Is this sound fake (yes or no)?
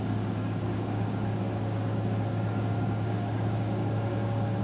yes